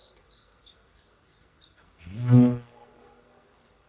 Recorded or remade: remade